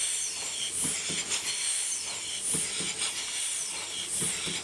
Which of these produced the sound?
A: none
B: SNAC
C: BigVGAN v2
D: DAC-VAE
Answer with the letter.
A